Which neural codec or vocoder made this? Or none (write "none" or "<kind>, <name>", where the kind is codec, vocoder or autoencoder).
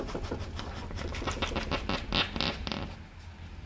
none